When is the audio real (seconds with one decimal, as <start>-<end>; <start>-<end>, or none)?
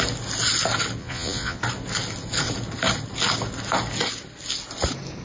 0.0-1.0; 1.6-5.2